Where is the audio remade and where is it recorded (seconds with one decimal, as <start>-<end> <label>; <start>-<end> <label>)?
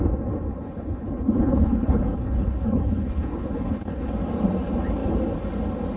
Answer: 0.0-0.5 recorded; 0.5-4.1 remade; 4.1-6.0 recorded